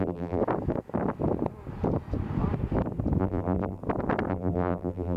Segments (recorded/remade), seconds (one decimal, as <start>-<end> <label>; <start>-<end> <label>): 0.0-0.4 remade; 0.4-3.2 recorded; 3.2-3.8 remade; 3.8-4.3 recorded; 4.3-5.2 remade